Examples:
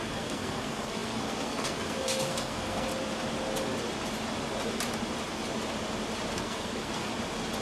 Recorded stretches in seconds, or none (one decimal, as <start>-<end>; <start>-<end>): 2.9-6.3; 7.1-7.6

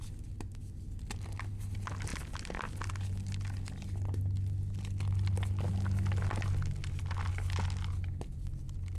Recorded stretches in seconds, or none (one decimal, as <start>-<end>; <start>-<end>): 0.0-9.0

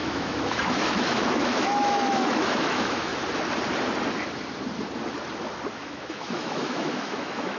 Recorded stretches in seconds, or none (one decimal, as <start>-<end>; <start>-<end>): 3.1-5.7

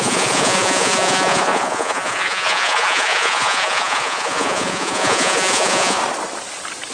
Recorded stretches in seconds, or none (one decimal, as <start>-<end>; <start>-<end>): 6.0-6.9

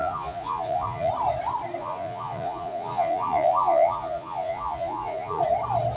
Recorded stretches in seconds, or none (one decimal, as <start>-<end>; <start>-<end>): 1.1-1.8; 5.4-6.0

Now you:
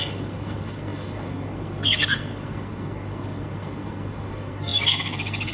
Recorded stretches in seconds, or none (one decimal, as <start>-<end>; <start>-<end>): none